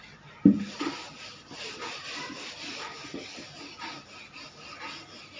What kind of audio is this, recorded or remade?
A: recorded